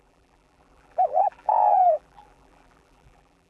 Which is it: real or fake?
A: fake